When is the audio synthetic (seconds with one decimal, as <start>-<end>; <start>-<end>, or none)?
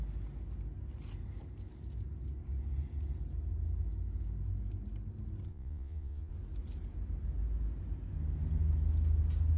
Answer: 5.5-6.3